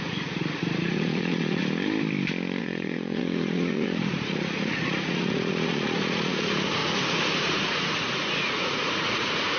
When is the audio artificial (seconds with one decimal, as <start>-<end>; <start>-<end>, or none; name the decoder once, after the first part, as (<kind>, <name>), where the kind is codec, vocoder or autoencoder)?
0.0-1.6 (vocoder, Vocos); 2.6-6.8; 7.4-9.6